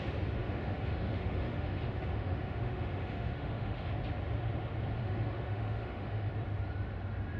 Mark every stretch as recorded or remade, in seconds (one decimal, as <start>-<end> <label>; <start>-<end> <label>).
0.0-0.4 recorded; 0.4-3.9 remade; 3.9-5.0 recorded; 5.0-6.3 remade; 6.3-7.4 recorded